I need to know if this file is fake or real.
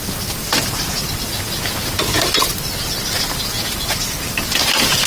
real